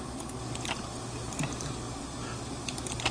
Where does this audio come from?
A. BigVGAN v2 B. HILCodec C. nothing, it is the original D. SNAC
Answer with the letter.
C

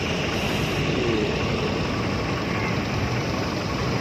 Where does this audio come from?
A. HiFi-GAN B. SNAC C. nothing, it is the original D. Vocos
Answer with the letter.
C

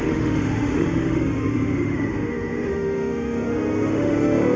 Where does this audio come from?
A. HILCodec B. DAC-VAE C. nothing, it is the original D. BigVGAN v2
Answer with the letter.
B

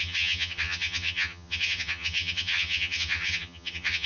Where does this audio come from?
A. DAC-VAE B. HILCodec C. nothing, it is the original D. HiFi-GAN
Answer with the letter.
D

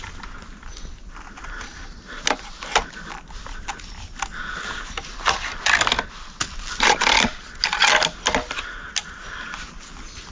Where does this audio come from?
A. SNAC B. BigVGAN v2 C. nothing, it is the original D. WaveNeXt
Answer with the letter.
C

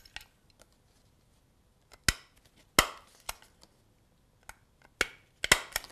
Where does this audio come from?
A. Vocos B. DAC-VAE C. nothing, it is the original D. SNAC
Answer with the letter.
C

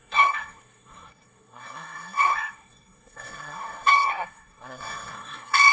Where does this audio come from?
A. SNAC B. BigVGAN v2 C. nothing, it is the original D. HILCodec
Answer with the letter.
A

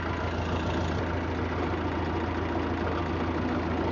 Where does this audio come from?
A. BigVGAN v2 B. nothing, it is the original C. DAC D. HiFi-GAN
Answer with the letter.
B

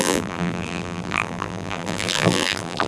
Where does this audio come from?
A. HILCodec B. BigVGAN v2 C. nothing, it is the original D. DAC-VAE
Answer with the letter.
B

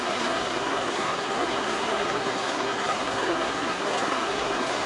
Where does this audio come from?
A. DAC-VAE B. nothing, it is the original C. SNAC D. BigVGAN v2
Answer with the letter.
C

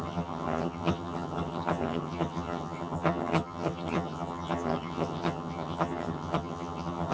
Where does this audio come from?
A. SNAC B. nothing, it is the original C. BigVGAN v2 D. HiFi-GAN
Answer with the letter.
D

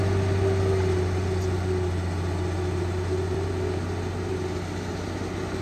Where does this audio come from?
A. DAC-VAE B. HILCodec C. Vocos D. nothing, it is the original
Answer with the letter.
D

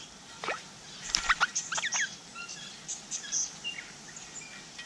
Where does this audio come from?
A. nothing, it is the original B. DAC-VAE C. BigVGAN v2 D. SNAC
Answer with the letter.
A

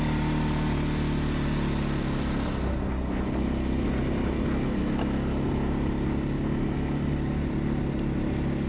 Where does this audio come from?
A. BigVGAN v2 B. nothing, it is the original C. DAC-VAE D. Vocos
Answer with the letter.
B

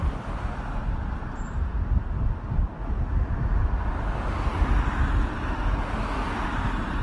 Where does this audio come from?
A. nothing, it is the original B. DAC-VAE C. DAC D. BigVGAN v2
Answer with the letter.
A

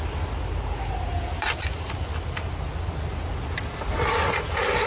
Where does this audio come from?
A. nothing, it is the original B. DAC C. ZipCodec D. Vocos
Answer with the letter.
A